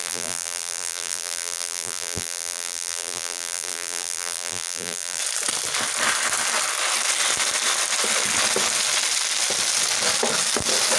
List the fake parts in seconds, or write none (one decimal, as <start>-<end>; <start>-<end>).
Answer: 0.0-5.2